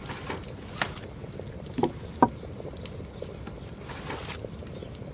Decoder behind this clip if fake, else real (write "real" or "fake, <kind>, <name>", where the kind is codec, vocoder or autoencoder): real